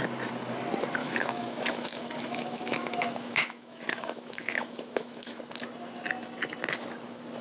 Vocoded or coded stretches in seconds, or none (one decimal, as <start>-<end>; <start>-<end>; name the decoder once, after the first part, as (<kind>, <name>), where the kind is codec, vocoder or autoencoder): 1.0-5.4 (autoencoder, DAC-VAE)